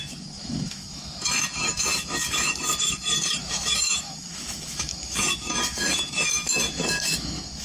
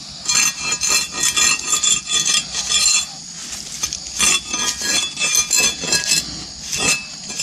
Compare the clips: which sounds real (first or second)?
second